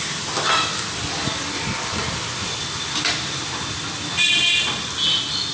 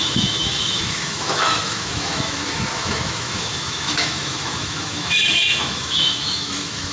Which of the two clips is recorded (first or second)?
first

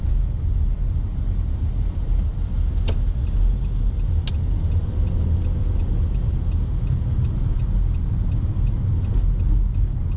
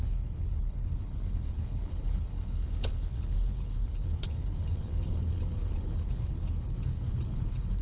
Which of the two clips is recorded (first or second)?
first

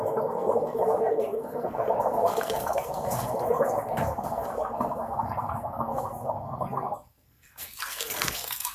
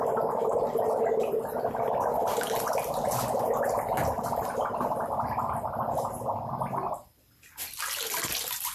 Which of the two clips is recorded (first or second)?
second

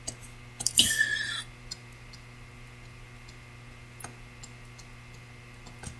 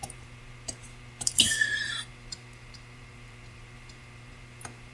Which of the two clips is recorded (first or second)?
first